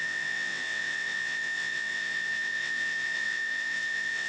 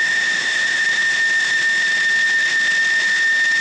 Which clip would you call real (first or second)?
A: second